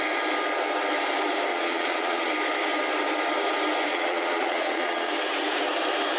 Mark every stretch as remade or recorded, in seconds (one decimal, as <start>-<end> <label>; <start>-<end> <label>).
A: 0.0-1.5 recorded; 1.5-2.3 remade; 2.3-3.9 recorded; 3.9-5.1 remade; 5.1-6.2 recorded